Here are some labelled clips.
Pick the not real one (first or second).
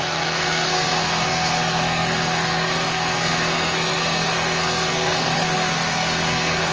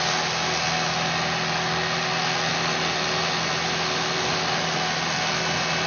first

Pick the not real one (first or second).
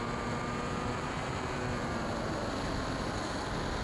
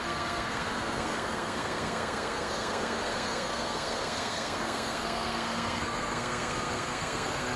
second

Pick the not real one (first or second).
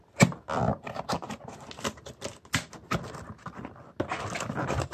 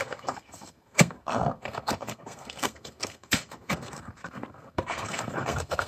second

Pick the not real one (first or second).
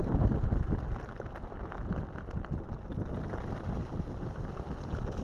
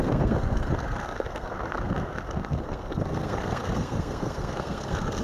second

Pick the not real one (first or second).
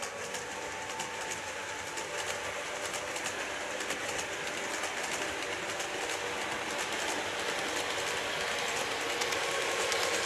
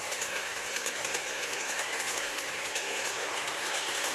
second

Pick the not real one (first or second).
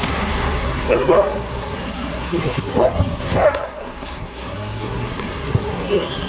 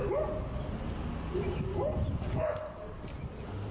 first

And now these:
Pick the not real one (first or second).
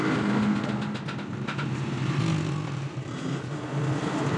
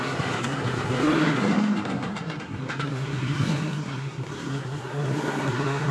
second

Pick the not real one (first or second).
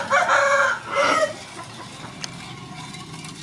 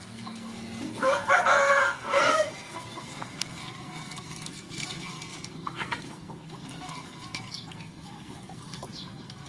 second